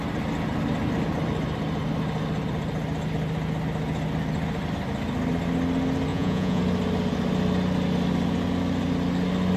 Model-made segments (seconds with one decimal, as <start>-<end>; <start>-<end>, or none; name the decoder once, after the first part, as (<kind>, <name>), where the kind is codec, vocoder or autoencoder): 6.1-6.6 (vocoder, Vocos)